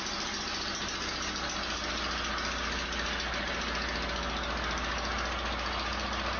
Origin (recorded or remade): recorded